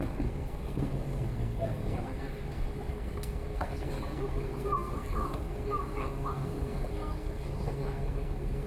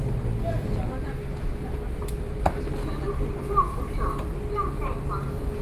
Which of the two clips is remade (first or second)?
first